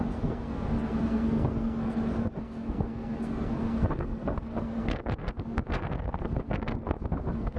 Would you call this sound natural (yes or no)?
no